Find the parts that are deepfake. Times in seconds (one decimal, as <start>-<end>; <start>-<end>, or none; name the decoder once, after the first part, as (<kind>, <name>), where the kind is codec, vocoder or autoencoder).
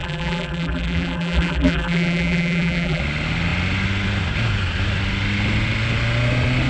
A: 0.0-3.0 (vocoder, BigVGAN v2)